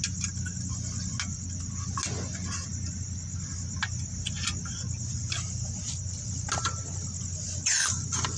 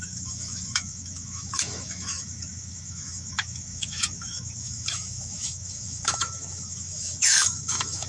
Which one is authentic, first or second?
first